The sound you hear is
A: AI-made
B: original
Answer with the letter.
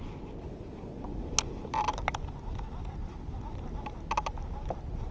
B